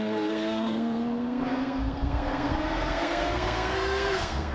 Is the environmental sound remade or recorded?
remade